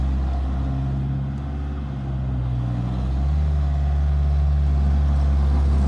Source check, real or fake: real